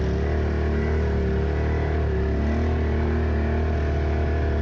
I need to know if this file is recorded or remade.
recorded